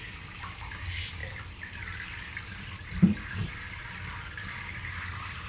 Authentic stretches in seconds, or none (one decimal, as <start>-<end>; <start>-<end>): 0.0-1.2; 1.8-3.4